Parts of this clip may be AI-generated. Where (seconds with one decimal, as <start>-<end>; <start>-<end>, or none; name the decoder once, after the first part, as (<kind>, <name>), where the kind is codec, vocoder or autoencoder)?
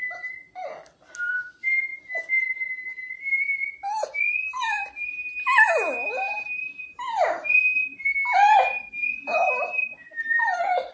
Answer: none